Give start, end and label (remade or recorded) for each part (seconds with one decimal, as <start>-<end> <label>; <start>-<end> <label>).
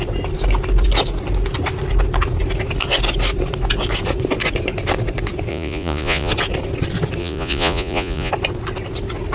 0.0-5.5 recorded; 5.5-6.3 remade; 6.3-7.2 recorded; 7.2-8.3 remade; 8.3-9.3 recorded